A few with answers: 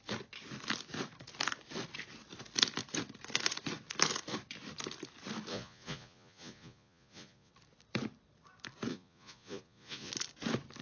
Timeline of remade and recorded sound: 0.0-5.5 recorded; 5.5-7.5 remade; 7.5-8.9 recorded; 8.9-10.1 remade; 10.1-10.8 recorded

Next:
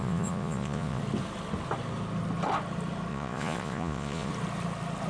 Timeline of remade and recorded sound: 0.0-1.0 remade; 1.0-3.1 recorded; 3.1-4.3 remade; 4.3-5.1 recorded

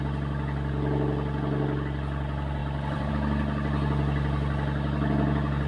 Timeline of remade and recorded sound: 0.0-2.6 recorded; 2.6-3.1 remade; 3.1-5.7 recorded

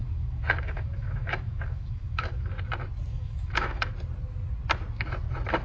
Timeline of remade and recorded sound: 0.0-2.6 remade; 2.6-3.1 recorded; 3.1-3.9 remade; 3.9-5.6 recorded

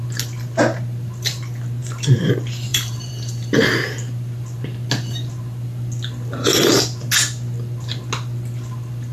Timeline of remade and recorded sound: 0.0-1.8 recorded; 1.8-2.3 remade; 2.3-2.7 recorded; 2.7-3.6 remade; 3.6-9.1 recorded

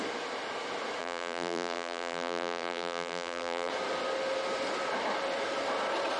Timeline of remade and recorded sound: 0.0-1.0 recorded; 1.0-3.7 remade; 3.7-6.2 recorded

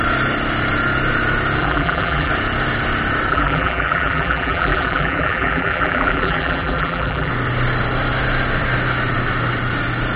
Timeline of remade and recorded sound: 0.0-1.6 recorded; 1.6-2.3 remade; 2.3-3.3 recorded; 3.3-7.3 remade; 7.3-10.2 recorded

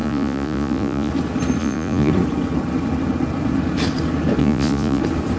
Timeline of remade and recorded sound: 0.0-1.1 remade; 1.1-1.6 recorded; 1.6-2.1 remade; 2.1-4.4 recorded; 4.4-5.0 remade; 5.0-5.4 recorded